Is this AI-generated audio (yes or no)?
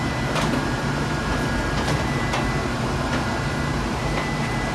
yes